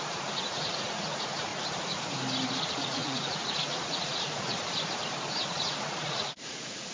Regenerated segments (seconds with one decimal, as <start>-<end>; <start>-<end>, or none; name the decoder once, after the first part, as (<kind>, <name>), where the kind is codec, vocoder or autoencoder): 0.0-1.5 (vocoder, Vocos); 2.6-4.6; 5.5-6.9

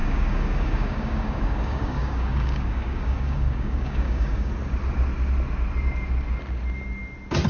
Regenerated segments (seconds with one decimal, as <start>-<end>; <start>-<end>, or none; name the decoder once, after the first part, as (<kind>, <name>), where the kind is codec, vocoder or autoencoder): 0.0-4.5 (codec, DAC)

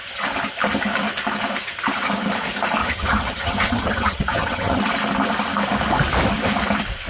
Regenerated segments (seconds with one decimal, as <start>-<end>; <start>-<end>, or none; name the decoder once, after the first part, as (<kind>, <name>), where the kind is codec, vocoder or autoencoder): 2.8-4.8 (vocoder, HiFi-GAN)

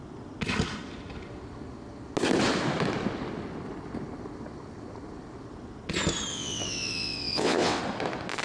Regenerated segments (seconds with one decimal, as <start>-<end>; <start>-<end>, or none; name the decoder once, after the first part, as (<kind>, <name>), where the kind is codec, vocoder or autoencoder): 6.3-7.8 (vocoder, WaveNeXt)

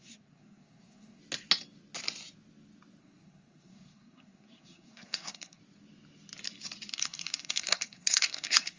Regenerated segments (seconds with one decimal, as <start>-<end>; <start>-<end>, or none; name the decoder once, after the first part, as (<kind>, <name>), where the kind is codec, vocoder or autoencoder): 0.0-1.2 (codec, SNAC); 3.0-5.6; 6.9-8.8

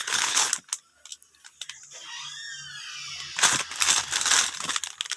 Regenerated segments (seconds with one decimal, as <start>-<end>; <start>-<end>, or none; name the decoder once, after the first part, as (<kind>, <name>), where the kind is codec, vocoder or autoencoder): 0.0-0.5 (codec, HILCodec)

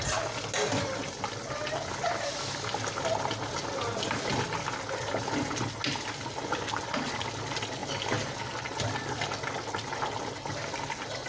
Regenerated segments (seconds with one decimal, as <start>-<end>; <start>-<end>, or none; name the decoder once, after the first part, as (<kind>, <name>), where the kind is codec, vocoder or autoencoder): none